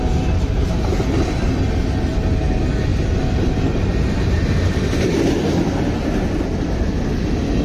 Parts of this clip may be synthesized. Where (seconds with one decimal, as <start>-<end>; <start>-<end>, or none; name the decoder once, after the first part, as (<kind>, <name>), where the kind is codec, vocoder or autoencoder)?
0.9-1.5 (vocoder, BigVGAN v2)

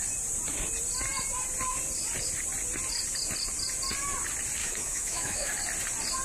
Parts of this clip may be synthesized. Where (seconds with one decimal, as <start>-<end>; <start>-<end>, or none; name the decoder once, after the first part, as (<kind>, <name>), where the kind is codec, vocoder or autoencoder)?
4.6-5.5 (autoencoder, DAC-VAE)